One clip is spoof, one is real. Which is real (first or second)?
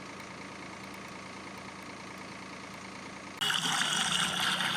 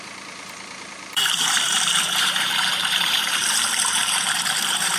first